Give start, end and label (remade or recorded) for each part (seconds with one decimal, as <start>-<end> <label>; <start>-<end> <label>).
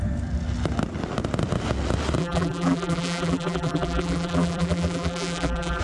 0.0-2.2 recorded; 2.2-5.8 remade